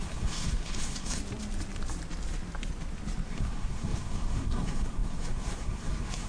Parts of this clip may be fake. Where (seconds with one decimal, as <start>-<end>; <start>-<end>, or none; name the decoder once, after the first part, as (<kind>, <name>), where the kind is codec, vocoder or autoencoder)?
0.0-1.2 (codec, SNAC); 3.3-6.3